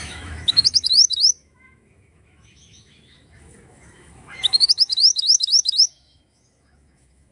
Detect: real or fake fake